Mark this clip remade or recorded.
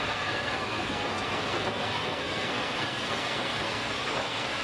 remade